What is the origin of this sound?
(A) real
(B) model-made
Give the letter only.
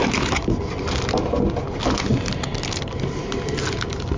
A